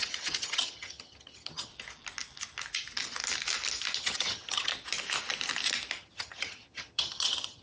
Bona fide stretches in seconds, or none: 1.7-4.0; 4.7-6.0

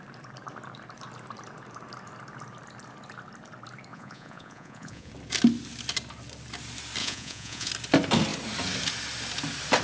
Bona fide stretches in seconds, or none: 0.0-3.9; 5.1-7.0; 7.7-9.8

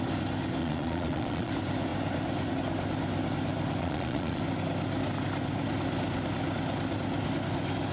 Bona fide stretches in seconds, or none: 0.0-0.6; 1.5-3.8; 4.4-7.9

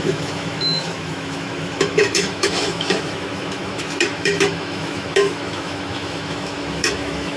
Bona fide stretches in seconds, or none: none

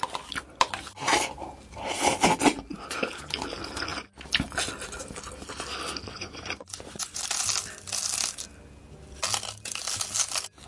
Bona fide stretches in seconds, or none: 0.0-6.1; 7.2-10.7

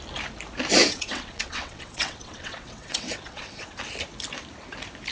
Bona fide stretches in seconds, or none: 0.0-0.8; 3.8-5.1